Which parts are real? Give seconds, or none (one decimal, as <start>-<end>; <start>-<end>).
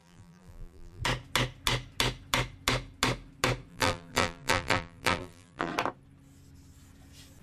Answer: 1.0-3.7; 5.7-7.4